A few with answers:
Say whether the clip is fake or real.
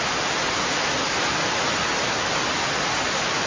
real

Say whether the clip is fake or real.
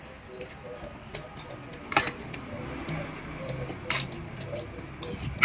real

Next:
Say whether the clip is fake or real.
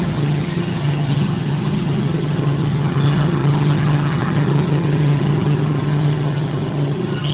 fake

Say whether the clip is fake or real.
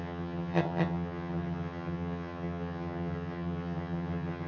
fake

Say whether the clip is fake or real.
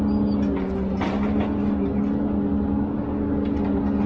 real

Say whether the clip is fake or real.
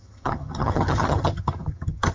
fake